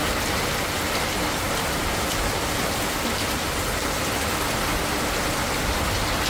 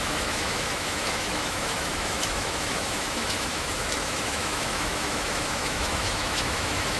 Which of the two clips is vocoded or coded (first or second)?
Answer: second